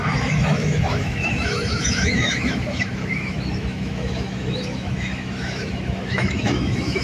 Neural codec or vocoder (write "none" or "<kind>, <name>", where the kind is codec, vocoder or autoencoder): autoencoder, DAC-VAE